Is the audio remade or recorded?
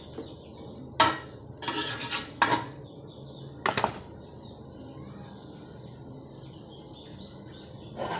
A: recorded